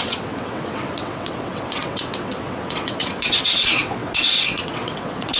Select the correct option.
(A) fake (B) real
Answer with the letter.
A